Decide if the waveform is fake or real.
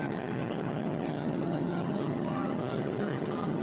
fake